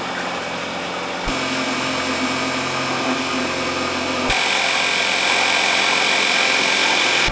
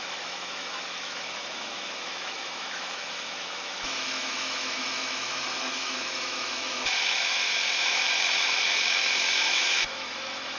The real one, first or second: first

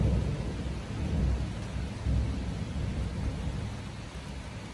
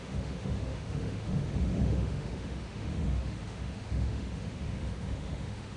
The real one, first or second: first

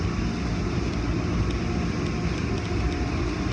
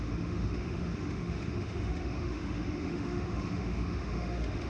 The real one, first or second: first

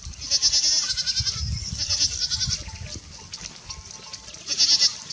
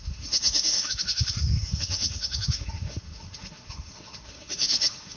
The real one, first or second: first